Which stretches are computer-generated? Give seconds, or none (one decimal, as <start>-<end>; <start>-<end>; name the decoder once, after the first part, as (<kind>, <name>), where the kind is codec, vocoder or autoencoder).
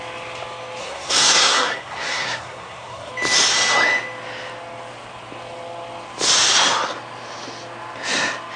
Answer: 0.8-3.1 (codec, SNAC)